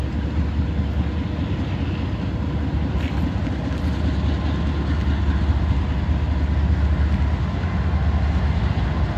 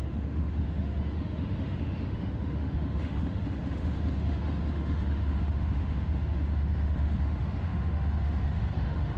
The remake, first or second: second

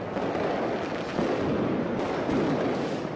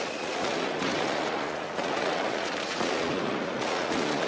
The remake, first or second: second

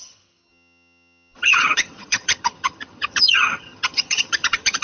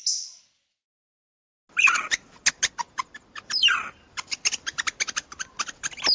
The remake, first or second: first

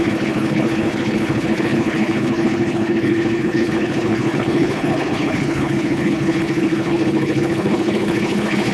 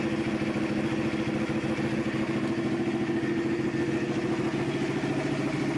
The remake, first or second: first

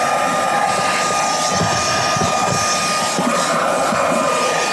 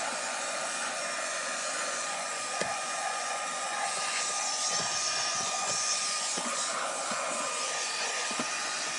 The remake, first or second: second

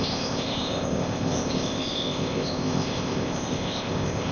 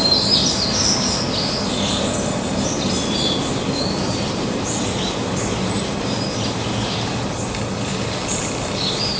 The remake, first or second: first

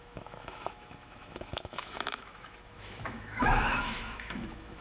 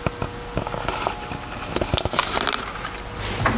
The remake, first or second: first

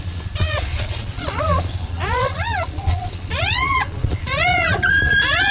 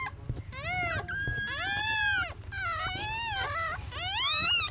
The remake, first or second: first